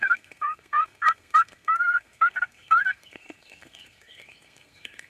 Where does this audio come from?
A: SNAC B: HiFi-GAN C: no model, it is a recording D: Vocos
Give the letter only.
A